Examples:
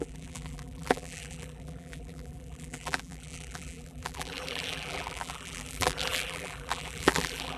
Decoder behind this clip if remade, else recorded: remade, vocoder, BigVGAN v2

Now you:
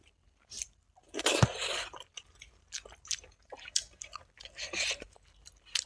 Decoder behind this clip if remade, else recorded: recorded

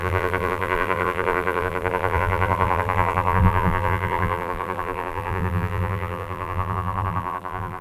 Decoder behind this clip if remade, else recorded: remade, vocoder, BigVGAN v2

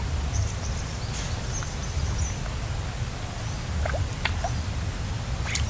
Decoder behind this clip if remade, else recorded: recorded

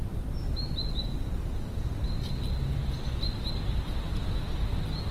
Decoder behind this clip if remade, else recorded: recorded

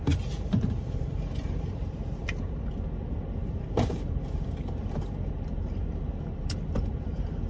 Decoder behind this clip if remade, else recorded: remade, vocoder, BigVGAN v2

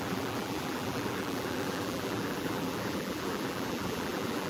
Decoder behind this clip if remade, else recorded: remade, vocoder, BigVGAN v2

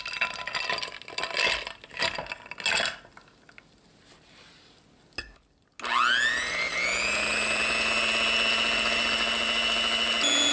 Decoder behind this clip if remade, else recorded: recorded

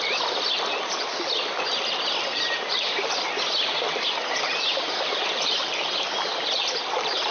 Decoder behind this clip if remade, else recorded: remade, vocoder, BigVGAN v2